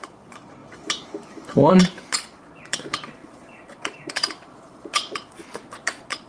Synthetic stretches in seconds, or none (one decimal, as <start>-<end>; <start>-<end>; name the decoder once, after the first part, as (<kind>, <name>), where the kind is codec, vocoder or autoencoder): 0.0-0.6 (vocoder, Vocos); 1.7-6.3